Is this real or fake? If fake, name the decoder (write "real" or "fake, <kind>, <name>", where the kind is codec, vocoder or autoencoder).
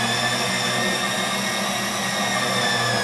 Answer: real